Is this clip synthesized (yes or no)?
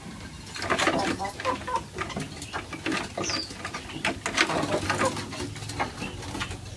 no